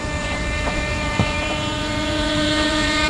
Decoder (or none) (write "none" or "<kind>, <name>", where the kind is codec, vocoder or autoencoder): vocoder, Vocos